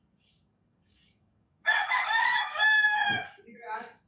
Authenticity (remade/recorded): remade